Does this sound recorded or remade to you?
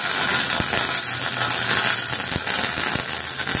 recorded